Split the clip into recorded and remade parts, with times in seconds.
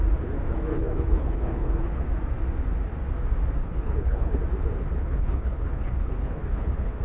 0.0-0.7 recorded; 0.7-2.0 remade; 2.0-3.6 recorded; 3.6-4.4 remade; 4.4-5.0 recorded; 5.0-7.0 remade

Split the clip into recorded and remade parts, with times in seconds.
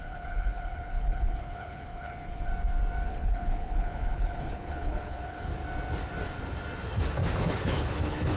0.0-2.5 remade; 2.5-3.1 recorded; 3.1-5.5 remade; 5.5-7.4 recorded; 7.4-8.4 remade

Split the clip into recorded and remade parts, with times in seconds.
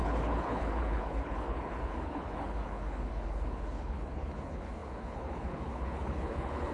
0.0-6.7 remade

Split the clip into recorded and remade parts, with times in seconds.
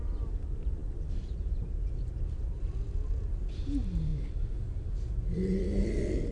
0.0-6.3 recorded